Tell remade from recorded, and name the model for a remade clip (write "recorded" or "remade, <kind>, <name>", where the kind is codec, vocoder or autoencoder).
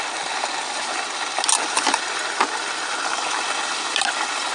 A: recorded